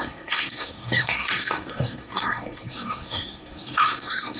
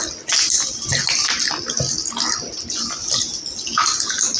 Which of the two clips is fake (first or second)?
first